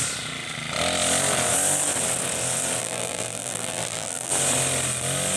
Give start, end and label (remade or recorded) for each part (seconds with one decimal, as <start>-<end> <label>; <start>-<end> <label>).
0.0-2.8 recorded; 2.8-4.3 remade; 4.3-5.4 recorded